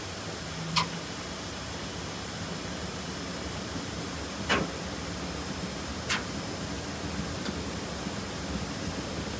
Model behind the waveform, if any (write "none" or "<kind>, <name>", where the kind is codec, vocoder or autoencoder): none